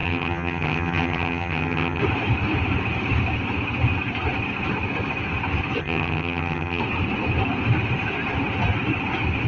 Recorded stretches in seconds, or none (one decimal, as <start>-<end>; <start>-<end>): 2.0-5.8; 6.8-9.5